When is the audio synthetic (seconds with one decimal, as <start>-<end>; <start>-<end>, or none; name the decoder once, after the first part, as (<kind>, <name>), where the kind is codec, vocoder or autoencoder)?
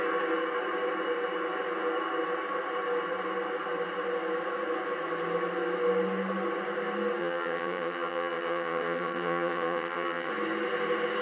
7.2-10.3 (vocoder, HiFi-GAN)